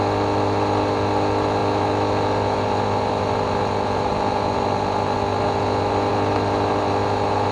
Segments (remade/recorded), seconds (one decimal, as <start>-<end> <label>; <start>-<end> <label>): 0.0-7.5 recorded